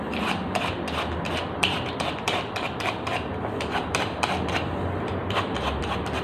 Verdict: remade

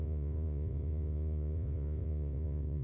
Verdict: remade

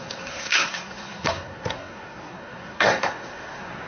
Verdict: remade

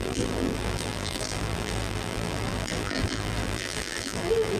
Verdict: remade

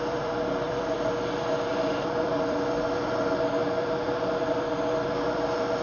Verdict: remade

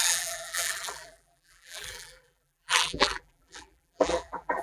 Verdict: remade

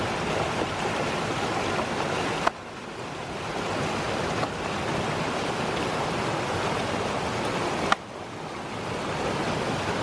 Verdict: recorded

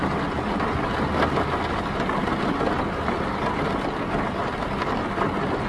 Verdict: recorded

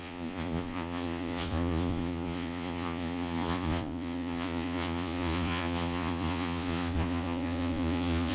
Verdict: remade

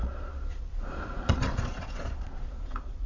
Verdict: remade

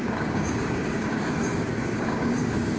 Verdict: remade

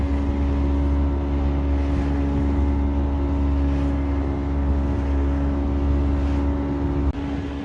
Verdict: recorded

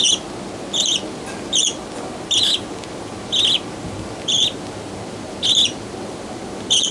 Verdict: recorded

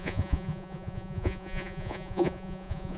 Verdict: remade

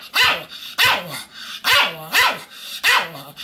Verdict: recorded